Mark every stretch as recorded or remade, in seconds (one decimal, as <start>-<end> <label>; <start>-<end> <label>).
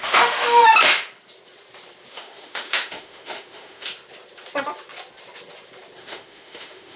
0.0-0.7 remade; 0.7-2.1 recorded; 2.1-3.9 remade; 3.9-6.0 recorded; 6.0-7.0 remade